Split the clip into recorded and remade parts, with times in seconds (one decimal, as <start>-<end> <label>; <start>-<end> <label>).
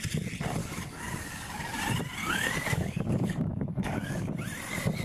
0.0-0.6 recorded; 0.6-1.8 remade; 1.8-2.2 recorded; 2.2-4.3 remade; 4.3-5.0 recorded